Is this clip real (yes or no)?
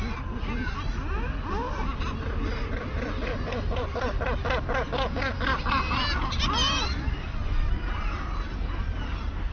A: yes